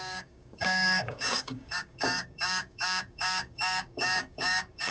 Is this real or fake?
fake